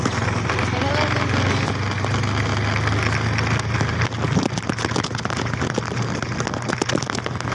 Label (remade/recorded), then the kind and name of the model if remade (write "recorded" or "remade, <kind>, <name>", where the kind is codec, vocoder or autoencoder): recorded